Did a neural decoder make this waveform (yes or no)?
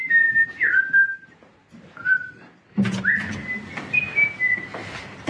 no